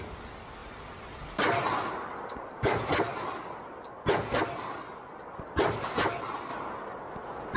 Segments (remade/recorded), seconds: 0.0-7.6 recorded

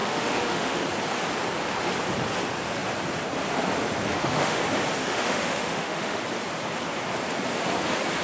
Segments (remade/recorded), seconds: 0.0-0.8 remade; 0.8-4.1 recorded; 4.1-4.6 remade; 4.6-5.0 recorded; 5.0-6.2 remade; 6.2-8.2 recorded

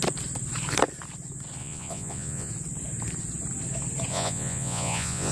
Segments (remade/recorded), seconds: 0.0-1.6 recorded; 1.6-2.5 remade; 2.5-4.1 recorded; 4.1-5.3 remade

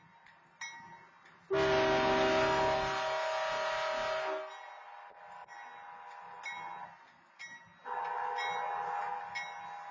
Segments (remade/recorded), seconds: 0.0-9.9 recorded

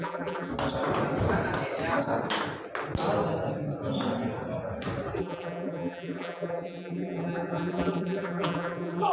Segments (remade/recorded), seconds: 0.0-0.5 remade; 0.5-5.2 recorded; 5.2-9.1 remade

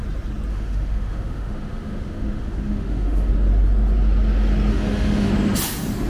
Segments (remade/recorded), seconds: 0.0-0.5 recorded; 0.5-3.3 remade; 3.3-4.7 recorded; 4.7-5.3 remade; 5.3-6.1 recorded